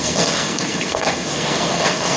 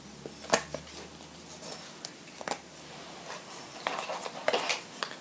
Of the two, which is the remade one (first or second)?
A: first